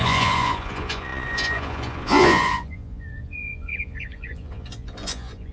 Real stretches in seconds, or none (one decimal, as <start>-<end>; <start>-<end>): none